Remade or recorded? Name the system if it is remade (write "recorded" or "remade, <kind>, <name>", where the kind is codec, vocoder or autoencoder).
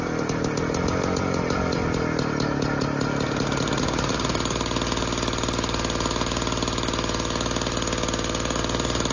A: recorded